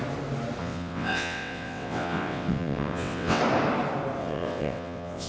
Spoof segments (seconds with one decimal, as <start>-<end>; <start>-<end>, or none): 0.6-3.4; 4.2-5.3

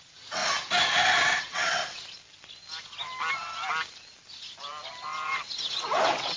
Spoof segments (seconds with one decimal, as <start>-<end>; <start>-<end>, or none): 0.0-0.4; 1.4-1.8; 5.6-6.4

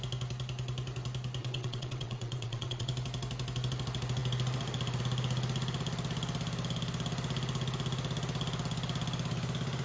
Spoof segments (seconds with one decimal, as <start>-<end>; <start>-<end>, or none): 1.4-2.9